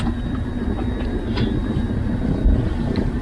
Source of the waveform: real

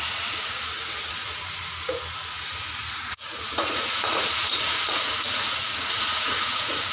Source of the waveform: fake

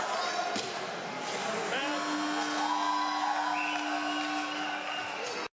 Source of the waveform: real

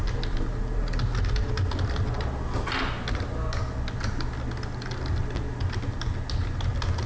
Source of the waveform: real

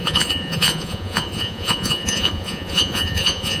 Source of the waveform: fake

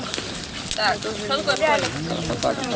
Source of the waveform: real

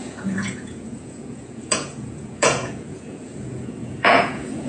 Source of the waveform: fake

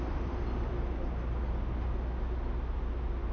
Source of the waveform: real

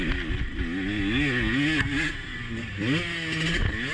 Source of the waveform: real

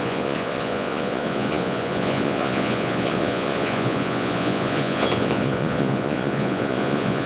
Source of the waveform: fake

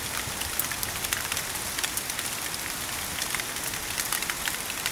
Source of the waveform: real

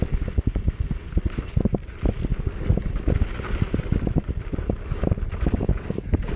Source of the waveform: real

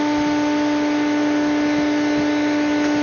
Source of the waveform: real